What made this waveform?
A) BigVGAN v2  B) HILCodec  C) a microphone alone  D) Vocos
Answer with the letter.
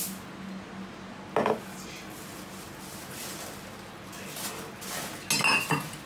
C